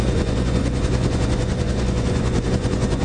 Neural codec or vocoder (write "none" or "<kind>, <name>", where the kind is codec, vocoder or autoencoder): vocoder, Vocos